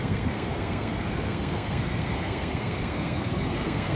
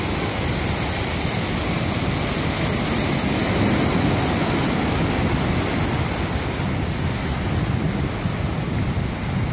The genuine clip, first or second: second